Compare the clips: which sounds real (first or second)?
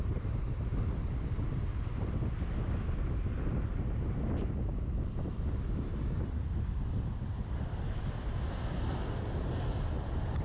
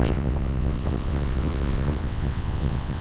first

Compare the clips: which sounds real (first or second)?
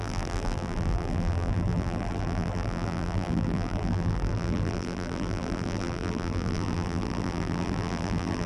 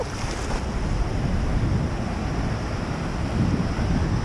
second